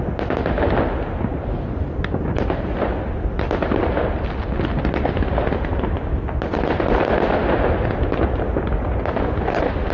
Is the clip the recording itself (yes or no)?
yes